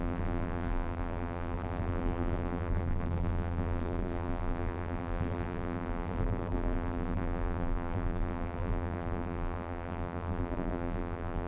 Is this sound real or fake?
fake